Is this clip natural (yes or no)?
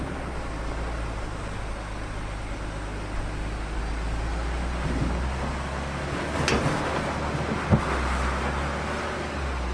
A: yes